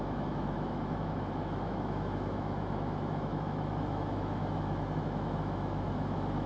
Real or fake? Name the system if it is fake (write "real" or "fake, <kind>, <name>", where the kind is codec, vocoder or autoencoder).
fake, autoencoder, DAC-VAE